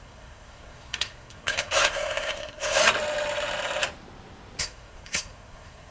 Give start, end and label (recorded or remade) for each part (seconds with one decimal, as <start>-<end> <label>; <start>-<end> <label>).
0.0-2.8 remade; 2.8-4.6 recorded; 4.6-5.9 remade